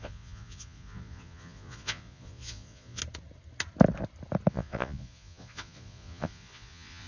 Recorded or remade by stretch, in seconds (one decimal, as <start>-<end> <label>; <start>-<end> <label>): 0.0-3.0 remade; 3.0-4.5 recorded; 4.5-7.1 remade